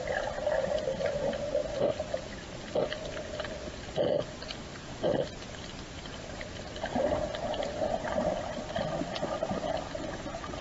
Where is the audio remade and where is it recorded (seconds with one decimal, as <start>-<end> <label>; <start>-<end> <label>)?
0.0-10.6 recorded